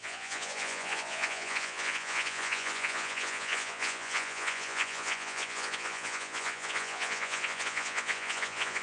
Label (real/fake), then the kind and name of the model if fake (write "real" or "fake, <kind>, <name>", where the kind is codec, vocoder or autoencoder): fake, vocoder, Vocos